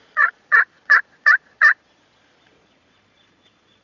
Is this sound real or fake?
fake